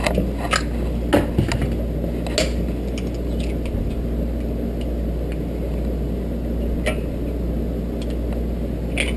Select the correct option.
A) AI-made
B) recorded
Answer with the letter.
B